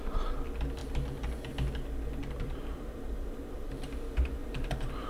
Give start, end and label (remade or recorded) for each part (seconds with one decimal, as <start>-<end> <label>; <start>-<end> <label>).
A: 0.0-2.2 recorded; 2.2-3.9 remade; 3.9-4.4 recorded; 4.4-5.1 remade